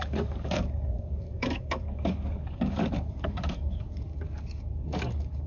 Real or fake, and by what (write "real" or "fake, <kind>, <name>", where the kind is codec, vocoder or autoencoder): fake, codec, DAC